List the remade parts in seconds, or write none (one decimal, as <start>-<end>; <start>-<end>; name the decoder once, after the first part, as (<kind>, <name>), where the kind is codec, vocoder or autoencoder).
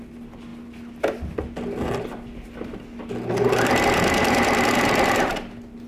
4.2-5.3 (vocoder, BigVGAN v2)